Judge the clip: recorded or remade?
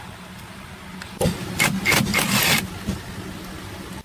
recorded